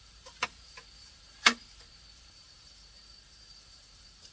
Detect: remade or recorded remade